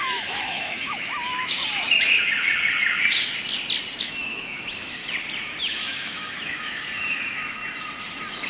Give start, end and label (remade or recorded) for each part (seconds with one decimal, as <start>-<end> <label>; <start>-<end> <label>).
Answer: 0.0-1.6 remade; 1.6-4.0 recorded; 4.0-5.0 remade; 5.0-5.6 recorded; 5.6-7.6 remade; 7.6-8.5 recorded